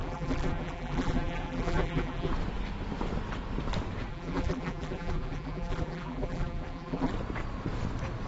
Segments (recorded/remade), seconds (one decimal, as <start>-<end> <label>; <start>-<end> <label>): 0.0-2.3 remade; 2.3-4.1 recorded; 4.1-7.1 remade; 7.1-8.3 recorded